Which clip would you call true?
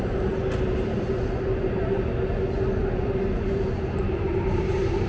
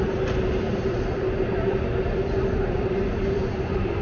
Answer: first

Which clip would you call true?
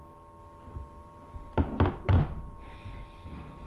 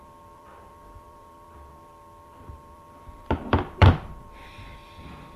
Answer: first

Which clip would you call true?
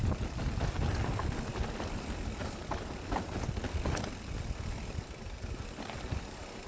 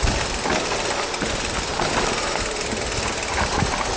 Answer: second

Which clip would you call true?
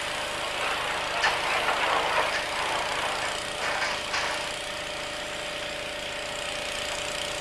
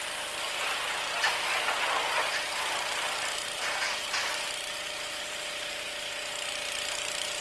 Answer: first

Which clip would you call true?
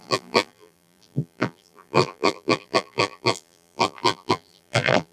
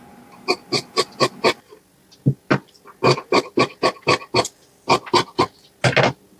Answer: second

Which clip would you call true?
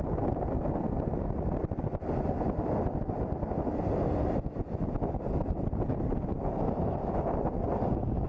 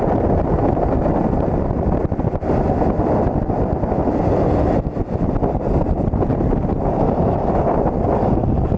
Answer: first